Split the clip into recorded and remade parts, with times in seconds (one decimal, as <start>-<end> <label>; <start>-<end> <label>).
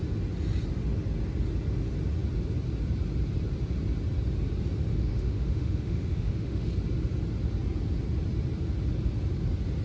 0.0-4.9 recorded; 4.9-6.7 remade; 6.7-9.8 recorded